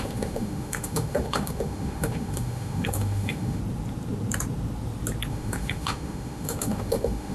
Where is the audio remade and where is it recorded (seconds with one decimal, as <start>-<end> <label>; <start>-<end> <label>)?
0.0-3.6 remade; 3.6-5.3 recorded; 5.3-7.3 remade